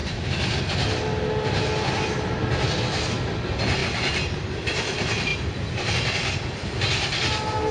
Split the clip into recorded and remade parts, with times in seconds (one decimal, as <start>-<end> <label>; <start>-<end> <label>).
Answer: 0.0-7.7 recorded